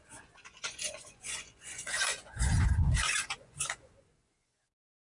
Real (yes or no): no